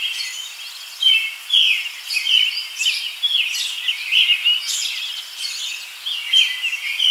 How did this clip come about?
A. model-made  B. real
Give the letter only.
B